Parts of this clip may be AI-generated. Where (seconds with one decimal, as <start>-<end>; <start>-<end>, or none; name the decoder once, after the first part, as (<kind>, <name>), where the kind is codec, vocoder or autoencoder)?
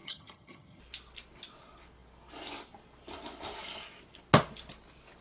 0.0-0.8 (vocoder, HiFi-GAN)